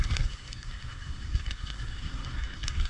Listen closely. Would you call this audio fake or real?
fake